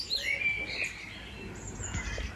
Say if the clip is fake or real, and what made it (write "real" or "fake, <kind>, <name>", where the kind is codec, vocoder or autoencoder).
real